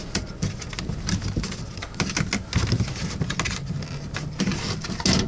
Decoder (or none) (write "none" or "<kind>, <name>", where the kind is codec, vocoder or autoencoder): none